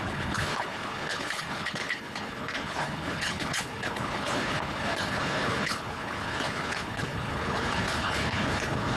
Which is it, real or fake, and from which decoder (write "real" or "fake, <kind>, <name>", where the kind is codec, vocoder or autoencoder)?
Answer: fake, codec, HILCodec